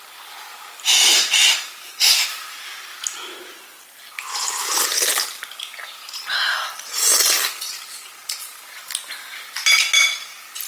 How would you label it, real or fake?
real